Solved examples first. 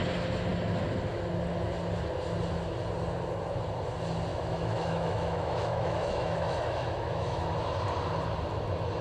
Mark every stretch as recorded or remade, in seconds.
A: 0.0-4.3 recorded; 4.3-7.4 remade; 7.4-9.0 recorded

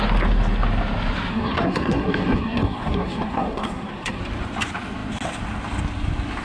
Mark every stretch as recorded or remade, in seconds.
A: 0.0-1.3 recorded; 1.3-4.2 remade; 4.2-6.4 recorded